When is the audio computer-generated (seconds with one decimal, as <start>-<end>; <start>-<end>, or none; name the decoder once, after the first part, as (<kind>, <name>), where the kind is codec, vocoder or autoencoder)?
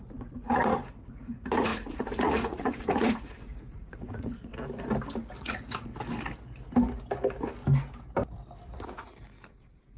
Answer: 0.0-4.5 (vocoder, Vocos); 5.4-5.9; 9.5-10.0